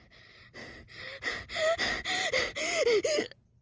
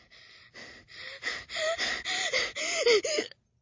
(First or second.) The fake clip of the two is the second